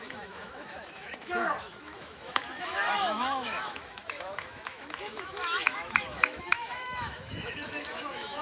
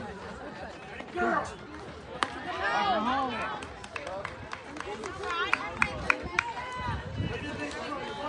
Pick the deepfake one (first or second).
first